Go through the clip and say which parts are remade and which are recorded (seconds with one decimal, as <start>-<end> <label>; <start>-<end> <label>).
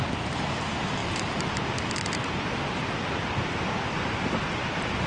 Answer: 0.0-5.1 remade